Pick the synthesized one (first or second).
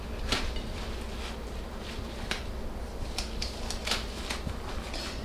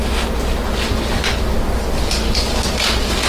first